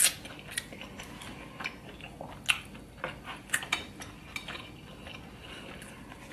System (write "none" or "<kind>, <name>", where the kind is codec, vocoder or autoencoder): none